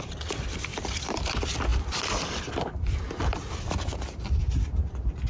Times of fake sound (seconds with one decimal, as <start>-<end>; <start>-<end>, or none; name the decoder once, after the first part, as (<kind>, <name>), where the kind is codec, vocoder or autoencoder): none